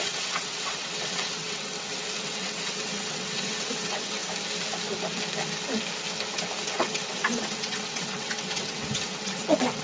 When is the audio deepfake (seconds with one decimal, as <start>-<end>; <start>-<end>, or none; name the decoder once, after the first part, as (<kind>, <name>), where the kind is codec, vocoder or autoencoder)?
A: 0.0-4.2 (vocoder, WaveNeXt); 6.7-9.8